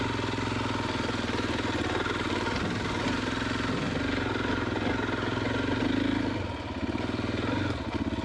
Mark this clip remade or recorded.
recorded